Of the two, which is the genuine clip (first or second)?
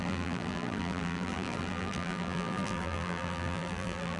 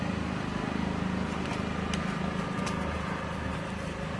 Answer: second